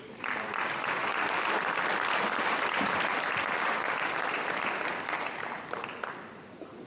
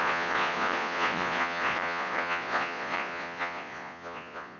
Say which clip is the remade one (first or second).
second